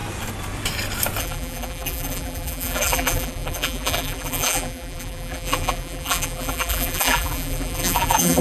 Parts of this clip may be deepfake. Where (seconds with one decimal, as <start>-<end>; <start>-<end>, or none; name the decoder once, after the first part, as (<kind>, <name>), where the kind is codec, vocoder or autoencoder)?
1.2-8.4 (vocoder, BigVGAN v2)